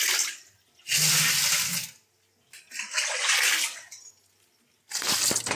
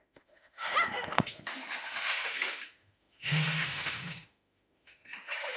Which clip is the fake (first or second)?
second